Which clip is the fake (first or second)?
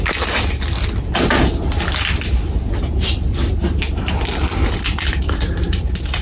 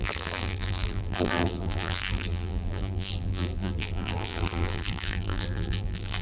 second